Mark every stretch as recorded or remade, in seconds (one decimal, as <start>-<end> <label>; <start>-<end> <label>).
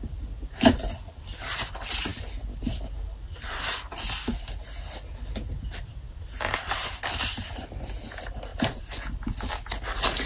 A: 0.0-10.3 recorded